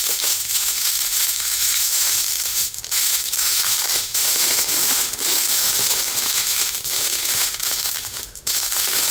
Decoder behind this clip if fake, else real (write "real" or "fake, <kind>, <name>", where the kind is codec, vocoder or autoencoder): fake, autoencoder, DAC-VAE